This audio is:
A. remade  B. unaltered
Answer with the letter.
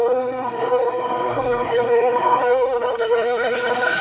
A